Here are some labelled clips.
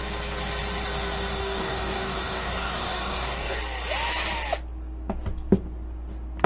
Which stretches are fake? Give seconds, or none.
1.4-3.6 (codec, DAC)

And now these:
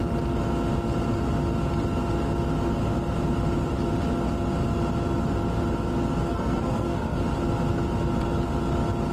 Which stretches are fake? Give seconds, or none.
6.3-7.2 (codec, SNAC)